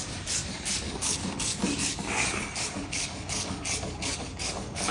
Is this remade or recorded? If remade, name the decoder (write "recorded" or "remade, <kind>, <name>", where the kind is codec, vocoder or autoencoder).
remade, codec, DAC